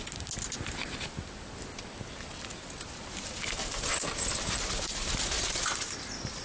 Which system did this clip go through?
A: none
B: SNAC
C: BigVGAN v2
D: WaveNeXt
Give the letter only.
A